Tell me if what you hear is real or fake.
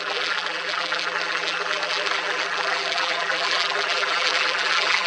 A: fake